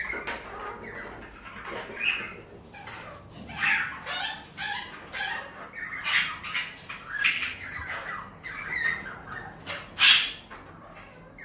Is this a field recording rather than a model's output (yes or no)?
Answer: yes